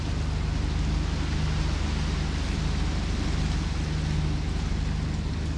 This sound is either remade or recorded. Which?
recorded